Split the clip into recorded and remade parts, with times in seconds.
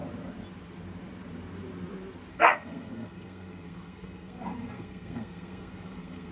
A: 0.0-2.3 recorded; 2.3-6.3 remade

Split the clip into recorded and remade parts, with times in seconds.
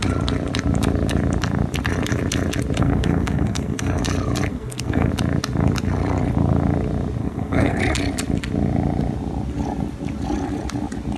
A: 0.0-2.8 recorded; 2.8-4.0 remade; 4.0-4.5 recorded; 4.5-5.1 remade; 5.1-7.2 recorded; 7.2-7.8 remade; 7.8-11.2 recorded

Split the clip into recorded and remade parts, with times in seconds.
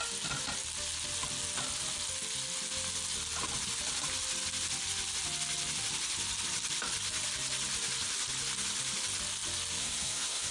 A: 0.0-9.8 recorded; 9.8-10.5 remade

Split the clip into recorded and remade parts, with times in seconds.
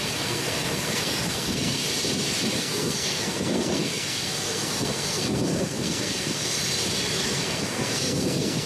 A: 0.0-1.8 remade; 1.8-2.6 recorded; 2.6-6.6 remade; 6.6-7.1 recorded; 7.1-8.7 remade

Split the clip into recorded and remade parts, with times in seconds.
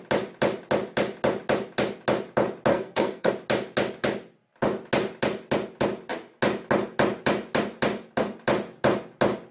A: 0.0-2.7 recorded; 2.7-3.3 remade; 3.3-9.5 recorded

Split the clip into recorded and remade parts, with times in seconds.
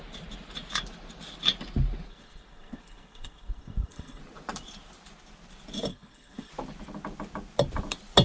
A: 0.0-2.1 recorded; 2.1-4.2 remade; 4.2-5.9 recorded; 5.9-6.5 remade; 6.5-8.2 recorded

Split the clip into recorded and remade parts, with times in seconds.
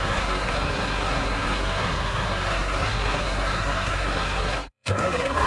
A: 0.0-5.5 remade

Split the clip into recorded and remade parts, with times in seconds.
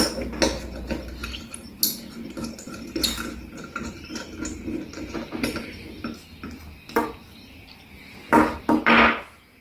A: 0.0-9.6 recorded